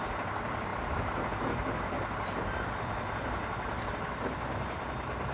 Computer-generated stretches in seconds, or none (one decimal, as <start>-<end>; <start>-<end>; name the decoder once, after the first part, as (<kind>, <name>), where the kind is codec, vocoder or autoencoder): none